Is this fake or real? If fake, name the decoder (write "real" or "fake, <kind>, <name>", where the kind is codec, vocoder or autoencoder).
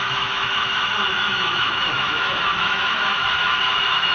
fake, autoencoder, DAC-VAE